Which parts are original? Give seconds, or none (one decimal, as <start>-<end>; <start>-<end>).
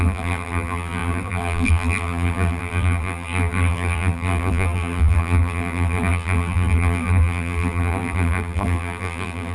none